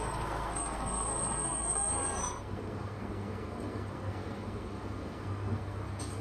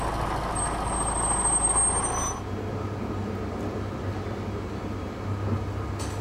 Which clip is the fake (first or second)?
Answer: first